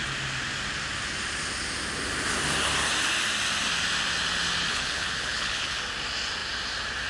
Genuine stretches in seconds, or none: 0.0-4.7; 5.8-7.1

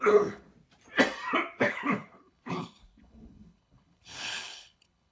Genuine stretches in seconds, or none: 0.5-1.6

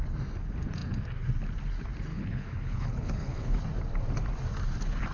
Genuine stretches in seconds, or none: 0.0-2.1; 3.6-5.1

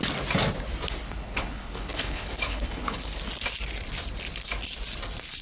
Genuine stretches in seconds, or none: 0.0-1.0; 3.2-5.4